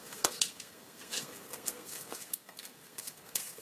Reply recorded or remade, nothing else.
remade